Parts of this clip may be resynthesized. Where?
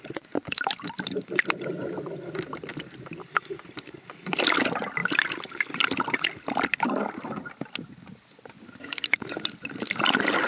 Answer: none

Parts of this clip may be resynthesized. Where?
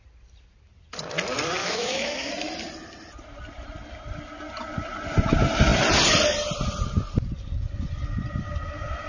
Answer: 1.6-2.3 (autoencoder, DAC-VAE)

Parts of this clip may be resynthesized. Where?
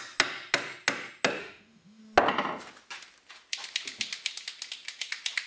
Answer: 1.4-2.0 (autoencoder, DAC-VAE)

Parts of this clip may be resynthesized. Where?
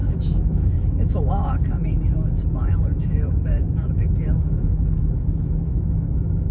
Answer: 0.0-1.3 (autoencoder, DAC-VAE); 3.0-6.5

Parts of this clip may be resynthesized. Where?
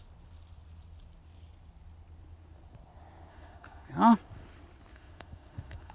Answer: 3.3-3.9 (autoencoder, DAC-VAE); 4.9-5.9